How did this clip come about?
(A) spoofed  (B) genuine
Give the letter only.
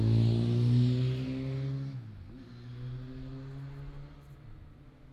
B